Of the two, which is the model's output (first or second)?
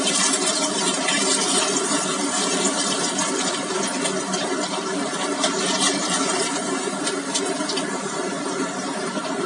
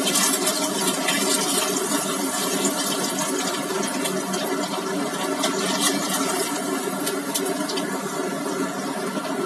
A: first